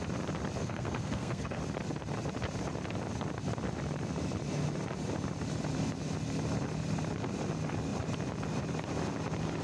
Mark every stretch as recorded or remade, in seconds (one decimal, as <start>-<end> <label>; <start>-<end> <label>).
0.0-0.6 recorded; 0.6-1.6 remade; 1.6-9.6 recorded